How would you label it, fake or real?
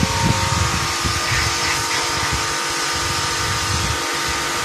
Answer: real